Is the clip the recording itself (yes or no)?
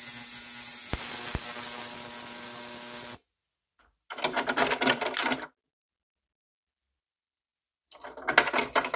yes